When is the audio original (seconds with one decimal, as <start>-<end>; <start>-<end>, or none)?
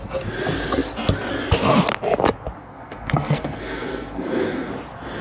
0.0-2.6; 4.7-5.2